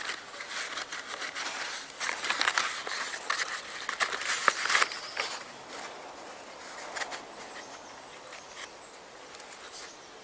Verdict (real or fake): real